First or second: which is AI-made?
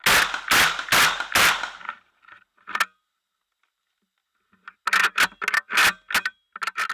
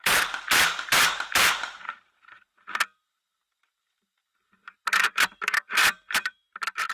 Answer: second